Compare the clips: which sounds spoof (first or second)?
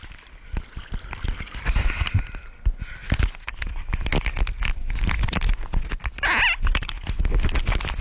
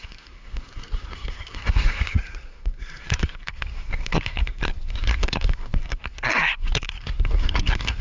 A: second